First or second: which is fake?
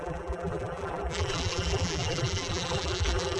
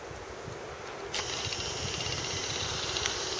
first